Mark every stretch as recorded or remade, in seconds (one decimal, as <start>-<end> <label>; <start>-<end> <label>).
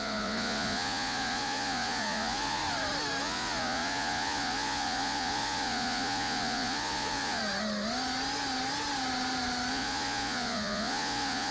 0.0-2.6 remade; 2.6-3.2 recorded; 3.2-7.4 remade; 7.4-9.7 recorded; 9.7-11.5 remade